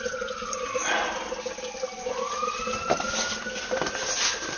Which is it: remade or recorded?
recorded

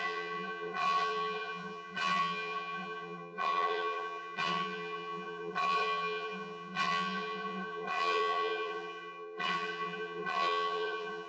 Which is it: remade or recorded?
remade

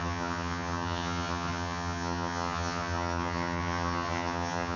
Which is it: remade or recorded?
remade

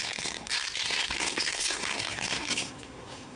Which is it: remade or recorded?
remade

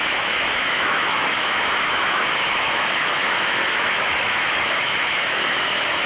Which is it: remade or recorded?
remade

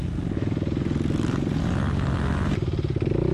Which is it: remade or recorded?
recorded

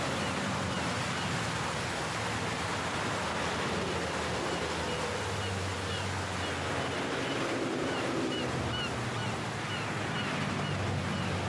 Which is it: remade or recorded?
recorded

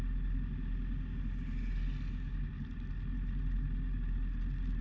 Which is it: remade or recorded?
recorded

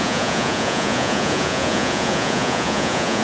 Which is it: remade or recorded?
remade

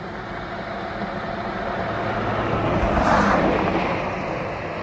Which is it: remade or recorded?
recorded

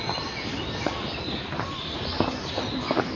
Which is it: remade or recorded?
recorded